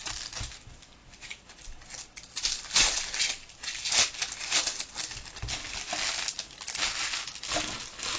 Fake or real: real